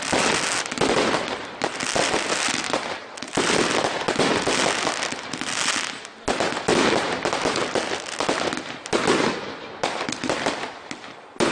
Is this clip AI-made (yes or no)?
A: no